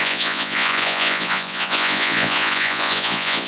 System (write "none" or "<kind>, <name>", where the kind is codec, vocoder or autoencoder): vocoder, Vocos